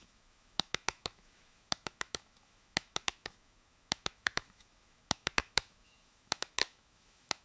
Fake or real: fake